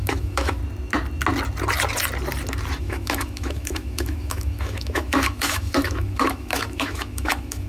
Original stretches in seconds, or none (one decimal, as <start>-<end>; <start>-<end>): 0.6-2.8